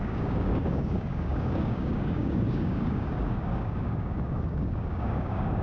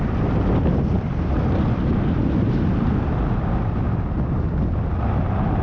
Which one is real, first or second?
second